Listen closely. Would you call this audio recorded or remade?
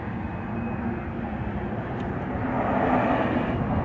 recorded